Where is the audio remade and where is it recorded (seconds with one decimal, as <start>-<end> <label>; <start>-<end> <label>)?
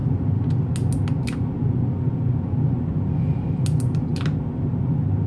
0.0-5.3 recorded